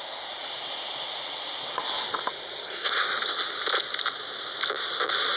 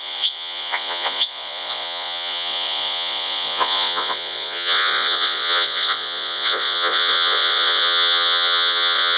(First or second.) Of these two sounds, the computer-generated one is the second